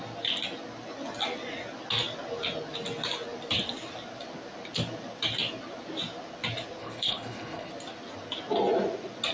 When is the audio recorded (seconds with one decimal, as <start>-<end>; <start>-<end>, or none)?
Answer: 0.0-6.8; 7.7-9.3